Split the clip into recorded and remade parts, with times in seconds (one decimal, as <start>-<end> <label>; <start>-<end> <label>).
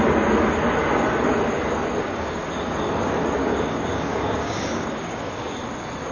0.0-2.0 recorded; 2.0-2.5 remade; 2.5-3.4 recorded; 3.4-5.5 remade; 5.5-6.1 recorded